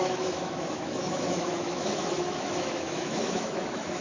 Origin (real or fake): fake